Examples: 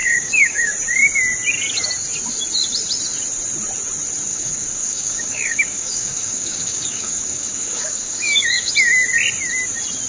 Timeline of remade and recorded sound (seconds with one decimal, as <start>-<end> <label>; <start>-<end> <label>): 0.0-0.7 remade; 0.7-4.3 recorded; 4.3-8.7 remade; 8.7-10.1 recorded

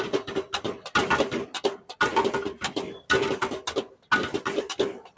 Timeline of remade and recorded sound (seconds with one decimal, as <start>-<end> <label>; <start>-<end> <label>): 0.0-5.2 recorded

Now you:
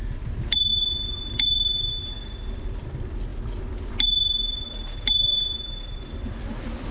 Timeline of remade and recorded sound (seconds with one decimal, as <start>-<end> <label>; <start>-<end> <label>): 0.0-0.7 recorded; 0.7-2.0 remade; 2.0-6.9 recorded

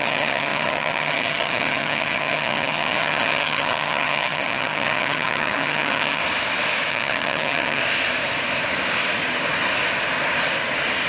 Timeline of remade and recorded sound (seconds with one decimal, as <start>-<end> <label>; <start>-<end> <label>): 0.0-6.2 remade; 6.2-6.9 recorded; 6.9-7.8 remade; 7.8-11.1 recorded